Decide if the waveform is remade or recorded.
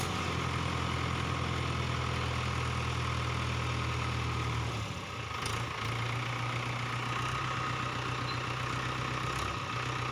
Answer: recorded